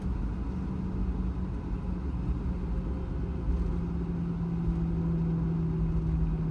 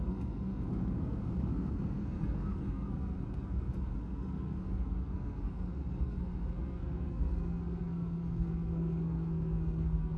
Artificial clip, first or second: second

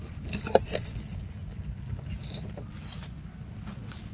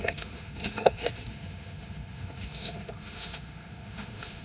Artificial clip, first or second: second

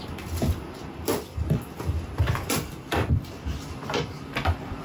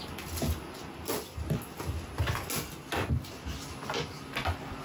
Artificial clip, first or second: first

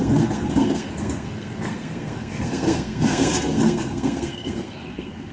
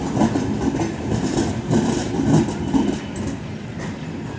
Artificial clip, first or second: first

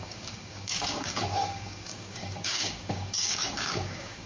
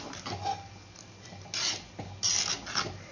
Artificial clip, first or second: first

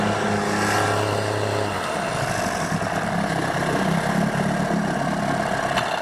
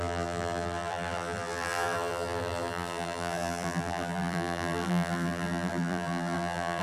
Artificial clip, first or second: second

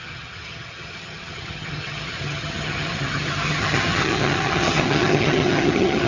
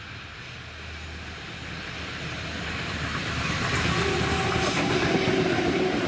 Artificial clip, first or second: first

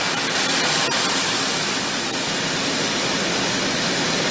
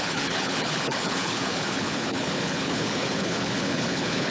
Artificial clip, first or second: second